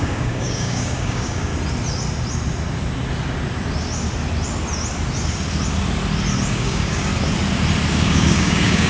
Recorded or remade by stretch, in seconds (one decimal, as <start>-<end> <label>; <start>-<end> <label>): 0.0-1.5 remade; 1.5-6.5 recorded; 6.5-7.1 remade; 7.1-7.9 recorded; 7.9-8.9 remade